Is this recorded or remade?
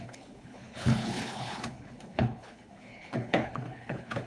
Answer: remade